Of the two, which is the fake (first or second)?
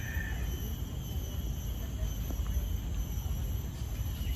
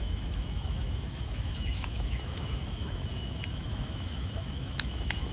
second